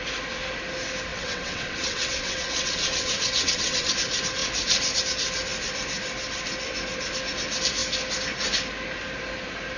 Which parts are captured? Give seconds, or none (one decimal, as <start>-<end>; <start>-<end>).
0.0-1.1; 3.9-9.8